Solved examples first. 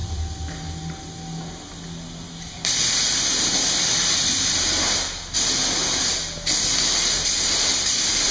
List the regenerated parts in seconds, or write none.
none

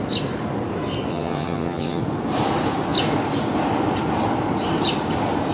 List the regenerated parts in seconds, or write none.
1.1-2.0

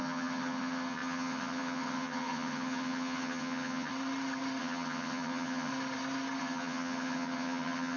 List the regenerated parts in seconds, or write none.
0.0-3.9; 4.6-5.7; 6.4-8.0

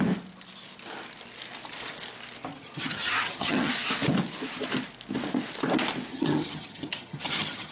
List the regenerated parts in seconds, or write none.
2.5-3.7; 6.1-7.7

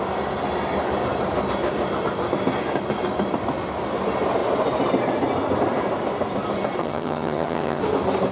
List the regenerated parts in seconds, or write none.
6.8-7.8

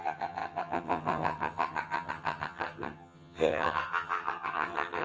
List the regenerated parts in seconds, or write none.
0.0-5.0

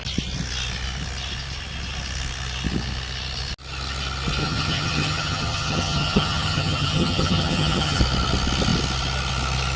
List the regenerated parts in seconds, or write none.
4.4-8.0

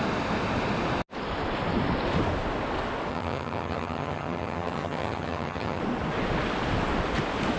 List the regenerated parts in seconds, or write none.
3.1-5.8